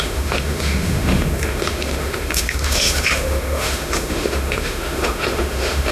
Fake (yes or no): yes